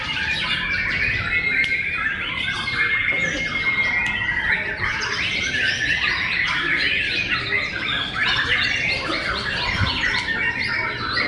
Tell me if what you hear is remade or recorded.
recorded